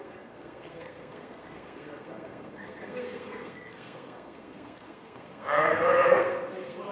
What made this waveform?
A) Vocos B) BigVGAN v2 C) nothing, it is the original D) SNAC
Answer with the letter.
D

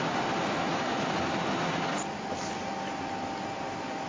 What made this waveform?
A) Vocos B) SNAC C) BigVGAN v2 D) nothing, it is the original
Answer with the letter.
D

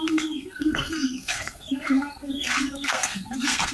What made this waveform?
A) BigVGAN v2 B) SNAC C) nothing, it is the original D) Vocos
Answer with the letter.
B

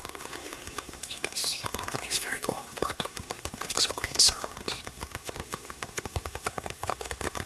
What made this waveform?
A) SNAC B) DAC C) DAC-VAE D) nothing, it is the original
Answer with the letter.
A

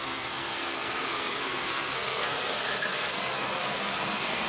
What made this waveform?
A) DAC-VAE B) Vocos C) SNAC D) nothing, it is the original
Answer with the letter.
C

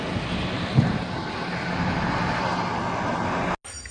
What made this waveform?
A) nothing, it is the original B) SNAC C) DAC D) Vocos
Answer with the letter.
A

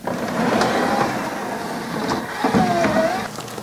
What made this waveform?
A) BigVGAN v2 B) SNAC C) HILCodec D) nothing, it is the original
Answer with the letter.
D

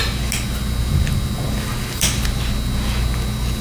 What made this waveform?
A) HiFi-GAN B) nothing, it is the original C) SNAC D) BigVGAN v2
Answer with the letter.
B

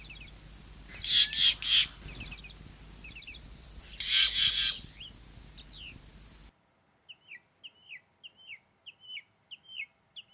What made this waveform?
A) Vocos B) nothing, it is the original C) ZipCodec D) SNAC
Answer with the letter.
B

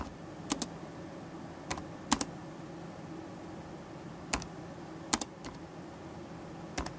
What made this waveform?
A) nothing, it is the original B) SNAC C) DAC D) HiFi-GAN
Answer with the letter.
A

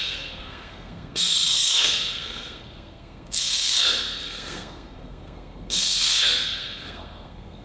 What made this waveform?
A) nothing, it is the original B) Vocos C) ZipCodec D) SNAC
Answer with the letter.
D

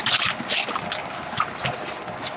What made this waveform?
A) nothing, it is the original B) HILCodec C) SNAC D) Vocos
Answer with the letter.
A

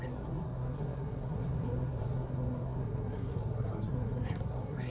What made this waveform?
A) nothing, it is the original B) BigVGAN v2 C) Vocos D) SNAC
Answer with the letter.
D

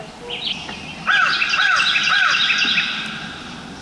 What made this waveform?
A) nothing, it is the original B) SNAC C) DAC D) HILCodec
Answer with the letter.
A